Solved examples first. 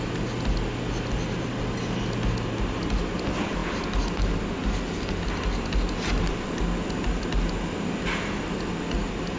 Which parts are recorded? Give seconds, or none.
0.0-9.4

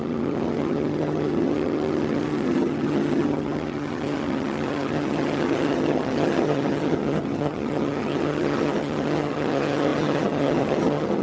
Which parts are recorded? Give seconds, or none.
none

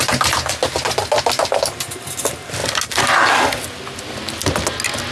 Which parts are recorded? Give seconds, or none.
0.0-5.1

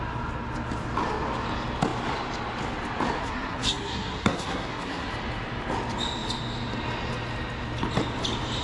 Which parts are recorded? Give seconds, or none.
0.0-3.2; 5.1-8.6

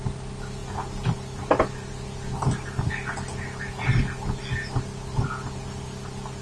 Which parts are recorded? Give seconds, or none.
0.0-6.4

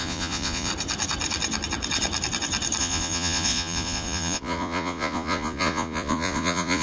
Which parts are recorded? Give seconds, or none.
0.7-2.8

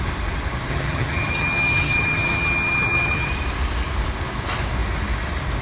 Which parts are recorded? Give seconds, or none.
0.0-0.7; 3.3-5.6